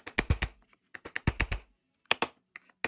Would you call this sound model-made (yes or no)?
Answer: no